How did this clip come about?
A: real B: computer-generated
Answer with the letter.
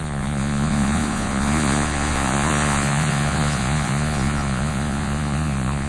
B